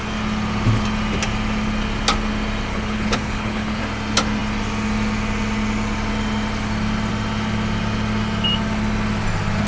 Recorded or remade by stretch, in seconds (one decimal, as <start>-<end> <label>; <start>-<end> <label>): 0.0-2.7 recorded; 2.7-3.8 remade; 3.8-9.7 recorded